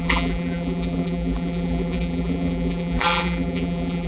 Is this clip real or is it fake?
fake